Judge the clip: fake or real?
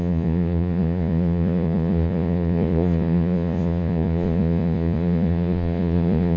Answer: fake